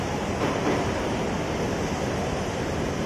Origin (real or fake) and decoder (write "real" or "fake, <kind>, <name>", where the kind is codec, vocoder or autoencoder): fake, vocoder, BigVGAN v2